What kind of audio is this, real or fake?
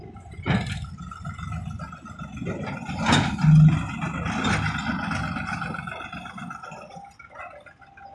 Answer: real